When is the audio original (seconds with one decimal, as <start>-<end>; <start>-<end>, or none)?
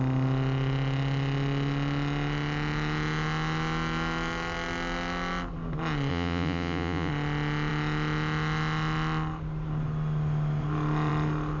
0.0-6.1; 7.1-11.6